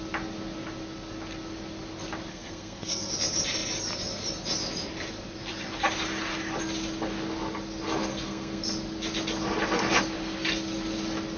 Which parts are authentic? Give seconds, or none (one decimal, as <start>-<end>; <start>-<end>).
0.0-2.3; 3.1-8.0; 8.6-11.4